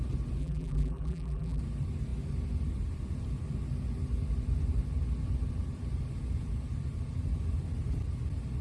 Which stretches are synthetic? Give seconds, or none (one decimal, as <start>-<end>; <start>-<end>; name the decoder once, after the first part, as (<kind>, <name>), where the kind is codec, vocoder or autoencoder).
0.4-1.6 (vocoder, BigVGAN v2)